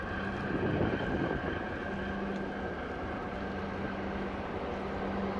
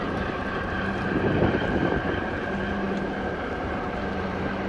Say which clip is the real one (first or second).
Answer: first